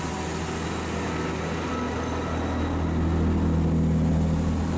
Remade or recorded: recorded